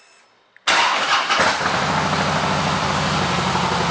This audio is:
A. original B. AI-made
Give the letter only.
A